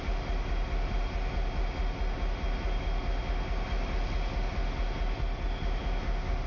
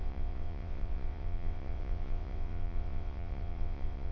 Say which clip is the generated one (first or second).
second